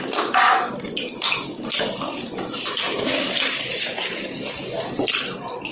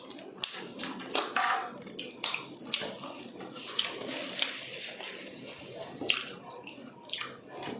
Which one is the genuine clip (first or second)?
second